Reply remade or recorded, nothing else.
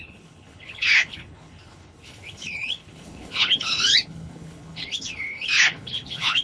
remade